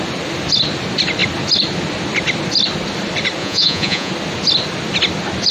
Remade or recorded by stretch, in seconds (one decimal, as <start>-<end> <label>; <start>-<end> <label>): 0.0-3.4 recorded; 3.4-4.1 remade; 4.1-5.5 recorded